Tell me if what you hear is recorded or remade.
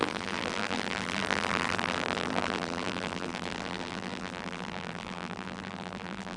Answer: remade